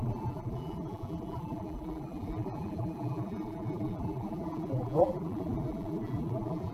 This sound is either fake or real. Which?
fake